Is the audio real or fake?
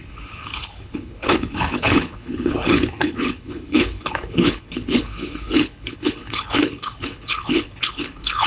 fake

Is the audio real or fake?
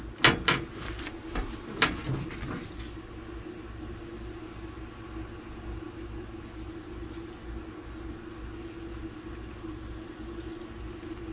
real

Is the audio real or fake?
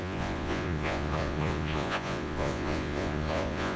fake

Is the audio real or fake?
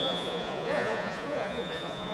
fake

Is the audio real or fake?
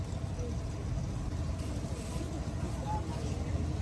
real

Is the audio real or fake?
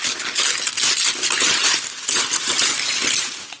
real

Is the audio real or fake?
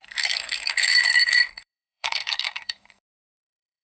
fake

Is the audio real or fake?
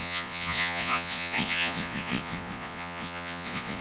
fake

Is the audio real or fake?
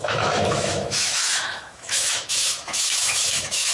fake